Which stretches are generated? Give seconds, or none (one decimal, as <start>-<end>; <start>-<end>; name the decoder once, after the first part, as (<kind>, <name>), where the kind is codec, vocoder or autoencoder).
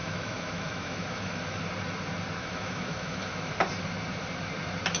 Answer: 0.0-1.6 (autoencoder, DAC-VAE); 2.4-3.5